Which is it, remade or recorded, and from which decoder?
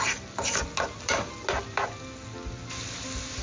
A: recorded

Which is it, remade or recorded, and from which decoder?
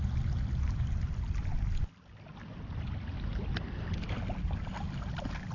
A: recorded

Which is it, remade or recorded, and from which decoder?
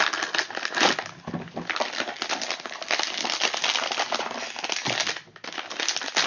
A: recorded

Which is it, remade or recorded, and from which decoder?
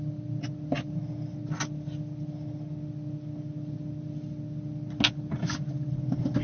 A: recorded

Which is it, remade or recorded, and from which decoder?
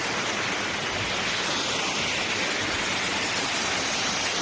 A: recorded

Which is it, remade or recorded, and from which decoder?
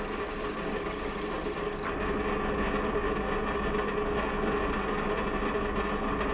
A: recorded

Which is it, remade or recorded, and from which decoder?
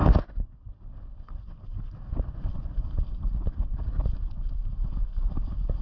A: recorded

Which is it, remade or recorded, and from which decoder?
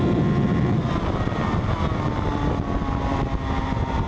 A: recorded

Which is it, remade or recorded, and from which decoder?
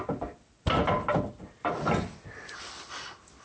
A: recorded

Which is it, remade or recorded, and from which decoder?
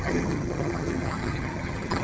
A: remade, vocoder, HiFi-GAN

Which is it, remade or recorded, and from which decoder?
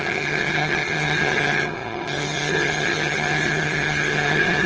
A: remade, vocoder, HiFi-GAN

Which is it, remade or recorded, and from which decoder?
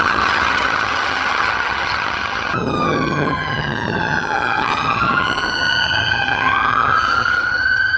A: remade, vocoder, HiFi-GAN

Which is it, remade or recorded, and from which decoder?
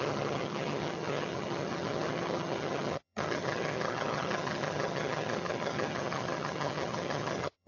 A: remade, vocoder, HiFi-GAN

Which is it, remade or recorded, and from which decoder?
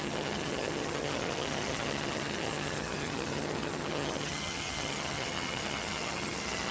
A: remade, vocoder, HiFi-GAN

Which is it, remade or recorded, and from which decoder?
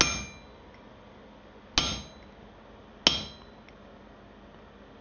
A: recorded